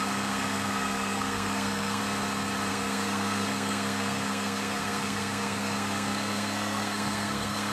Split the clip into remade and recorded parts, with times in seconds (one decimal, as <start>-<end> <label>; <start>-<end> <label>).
0.0-2.0 remade; 2.0-2.7 recorded; 2.7-7.7 remade